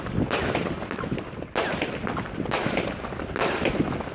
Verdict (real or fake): real